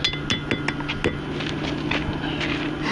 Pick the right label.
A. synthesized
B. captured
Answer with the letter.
B